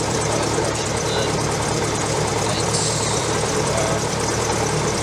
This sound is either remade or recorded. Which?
remade